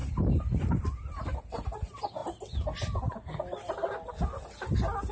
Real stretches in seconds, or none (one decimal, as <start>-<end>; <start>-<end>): 0.0-5.1